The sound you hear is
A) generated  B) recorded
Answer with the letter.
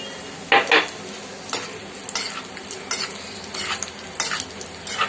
B